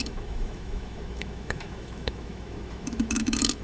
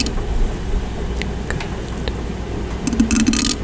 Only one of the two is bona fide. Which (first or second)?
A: second